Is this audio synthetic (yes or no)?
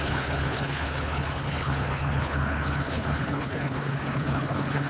yes